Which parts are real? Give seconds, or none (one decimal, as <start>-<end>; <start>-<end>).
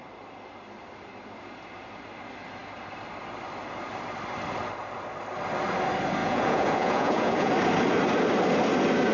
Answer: 0.0-6.2; 7.5-9.1